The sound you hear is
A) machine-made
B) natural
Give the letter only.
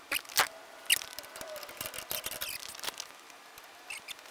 B